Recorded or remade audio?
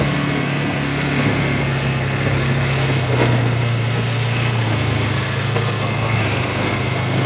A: remade